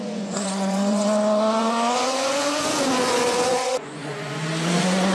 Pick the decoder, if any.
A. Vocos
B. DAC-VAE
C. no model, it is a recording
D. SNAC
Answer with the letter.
A